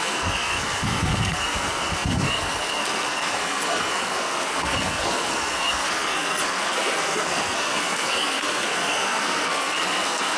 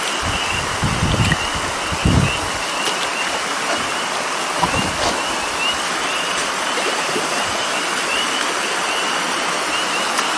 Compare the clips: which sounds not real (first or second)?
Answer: first